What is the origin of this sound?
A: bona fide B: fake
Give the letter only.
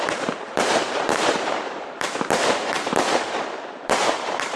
B